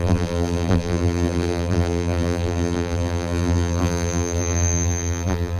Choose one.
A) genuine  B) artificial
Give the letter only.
B